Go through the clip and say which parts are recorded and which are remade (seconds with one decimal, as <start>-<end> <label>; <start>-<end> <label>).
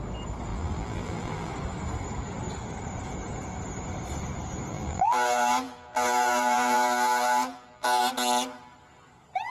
0.0-0.5 recorded; 0.5-1.5 remade; 1.5-4.7 recorded; 4.7-8.0 remade; 8.0-9.5 recorded